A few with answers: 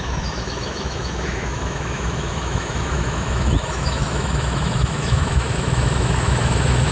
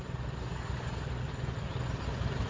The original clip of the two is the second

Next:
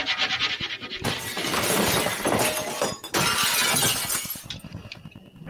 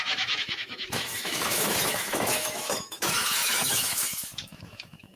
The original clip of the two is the first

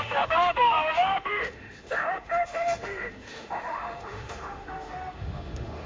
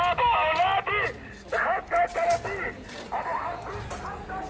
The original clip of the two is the second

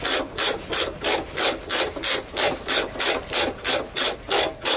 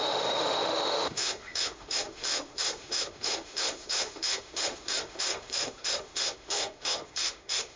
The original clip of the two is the first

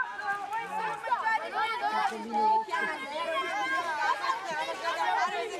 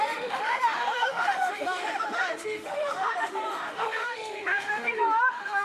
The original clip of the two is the first